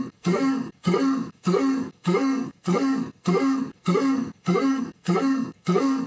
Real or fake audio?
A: fake